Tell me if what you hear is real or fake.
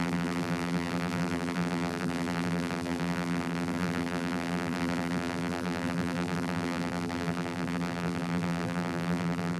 fake